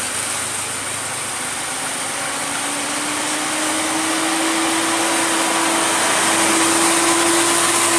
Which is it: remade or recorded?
recorded